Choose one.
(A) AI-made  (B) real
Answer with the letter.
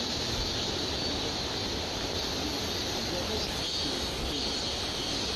B